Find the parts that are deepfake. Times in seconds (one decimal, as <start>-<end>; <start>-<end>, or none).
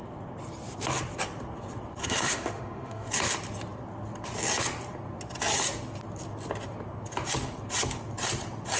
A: 2.0-3.1